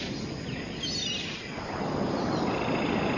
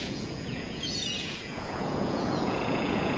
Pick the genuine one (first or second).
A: first